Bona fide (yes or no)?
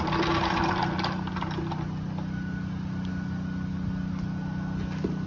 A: yes